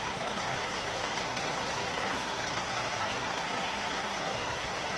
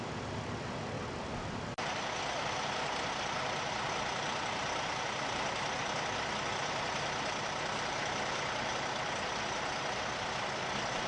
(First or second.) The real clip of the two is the second